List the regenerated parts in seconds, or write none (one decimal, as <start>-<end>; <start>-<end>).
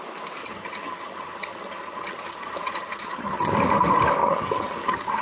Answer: 0.4-3.5; 4.2-5.2